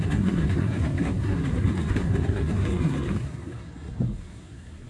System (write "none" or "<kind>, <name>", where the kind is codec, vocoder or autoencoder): codec, SNAC